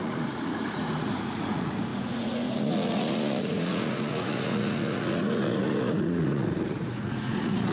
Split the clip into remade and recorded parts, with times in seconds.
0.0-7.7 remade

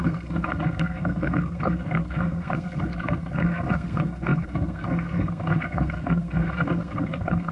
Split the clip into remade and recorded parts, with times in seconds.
0.0-7.5 remade